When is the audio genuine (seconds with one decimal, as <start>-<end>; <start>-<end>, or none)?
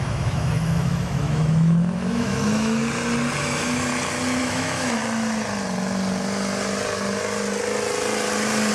2.8-3.4; 3.9-4.4; 5.0-8.7